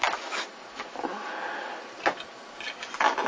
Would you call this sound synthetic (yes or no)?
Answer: no